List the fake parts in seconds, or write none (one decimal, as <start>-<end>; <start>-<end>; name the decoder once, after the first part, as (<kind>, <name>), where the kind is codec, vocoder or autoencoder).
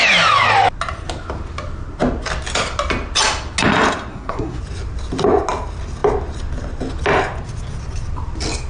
4.1-4.6 (codec, SNAC)